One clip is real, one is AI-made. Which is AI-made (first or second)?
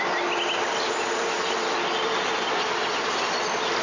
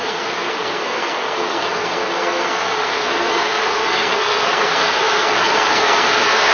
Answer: second